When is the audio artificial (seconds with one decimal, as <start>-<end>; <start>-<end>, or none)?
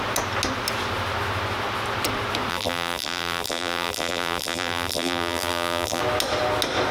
2.5-6.0